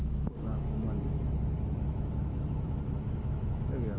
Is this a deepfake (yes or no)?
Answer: yes